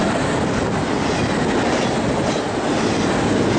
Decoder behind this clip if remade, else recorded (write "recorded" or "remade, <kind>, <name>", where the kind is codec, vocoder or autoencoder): recorded